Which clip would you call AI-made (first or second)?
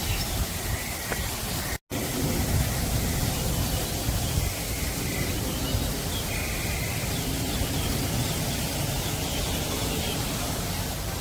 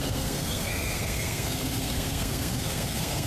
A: second